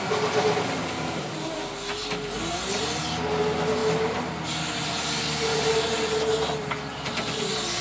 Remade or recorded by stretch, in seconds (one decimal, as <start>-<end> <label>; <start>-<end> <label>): 0.0-7.8 recorded